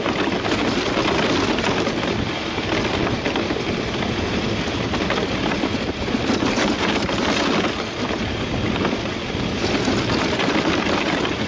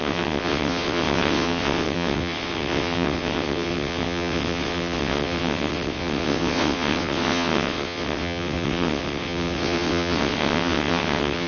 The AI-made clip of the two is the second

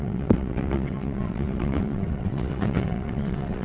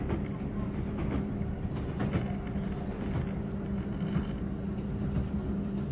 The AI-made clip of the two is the first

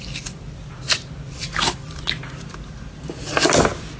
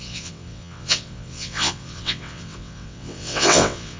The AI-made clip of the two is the second